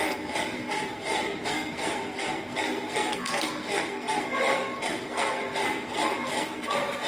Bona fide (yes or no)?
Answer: no